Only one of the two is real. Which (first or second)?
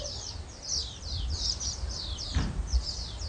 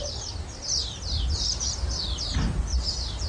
second